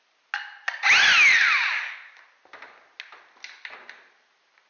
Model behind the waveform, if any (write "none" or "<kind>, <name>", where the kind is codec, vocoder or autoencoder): none